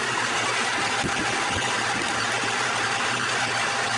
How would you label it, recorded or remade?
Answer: recorded